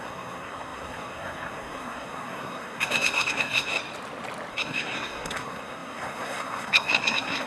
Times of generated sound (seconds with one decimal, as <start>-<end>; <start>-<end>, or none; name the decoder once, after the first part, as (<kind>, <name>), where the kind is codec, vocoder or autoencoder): 0.0-3.8 (codec, SNAC); 4.5-7.5